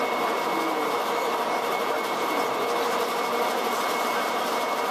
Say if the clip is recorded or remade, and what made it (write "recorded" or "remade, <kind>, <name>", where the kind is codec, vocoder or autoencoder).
recorded